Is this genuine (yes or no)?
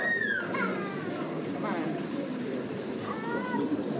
yes